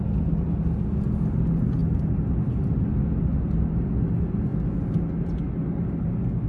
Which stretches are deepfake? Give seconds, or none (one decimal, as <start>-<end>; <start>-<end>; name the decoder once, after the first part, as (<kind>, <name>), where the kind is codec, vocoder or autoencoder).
none